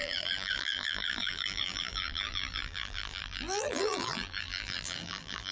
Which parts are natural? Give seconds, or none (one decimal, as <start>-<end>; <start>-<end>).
none